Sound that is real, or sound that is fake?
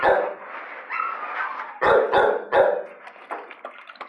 real